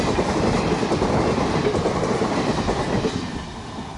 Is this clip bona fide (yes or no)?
yes